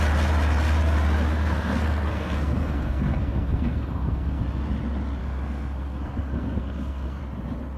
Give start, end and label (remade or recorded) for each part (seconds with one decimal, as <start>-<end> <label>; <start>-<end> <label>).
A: 0.0-1.3 recorded; 1.3-4.4 remade; 4.4-5.2 recorded; 5.2-7.2 remade; 7.2-7.8 recorded